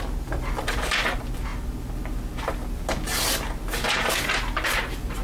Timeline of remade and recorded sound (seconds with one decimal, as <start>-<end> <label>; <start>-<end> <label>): 0.0-5.2 recorded